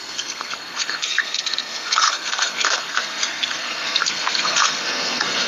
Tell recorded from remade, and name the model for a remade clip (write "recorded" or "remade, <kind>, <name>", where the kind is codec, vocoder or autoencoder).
remade, codec, SNAC